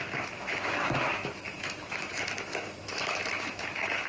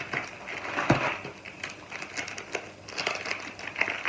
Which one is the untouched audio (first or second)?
second